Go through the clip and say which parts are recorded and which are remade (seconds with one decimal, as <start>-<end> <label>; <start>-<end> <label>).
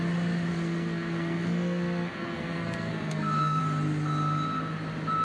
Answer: 0.0-0.5 recorded; 0.5-3.6 remade; 3.6-5.2 recorded